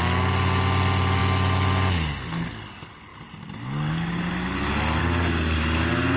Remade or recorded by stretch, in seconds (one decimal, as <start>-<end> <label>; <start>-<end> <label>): 0.0-6.2 recorded